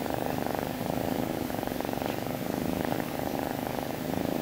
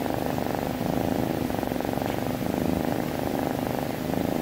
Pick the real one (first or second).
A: second